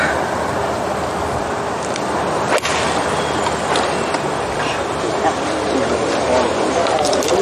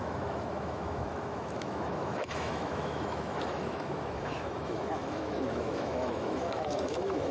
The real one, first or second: first